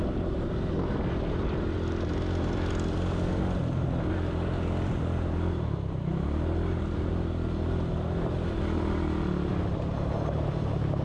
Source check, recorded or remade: recorded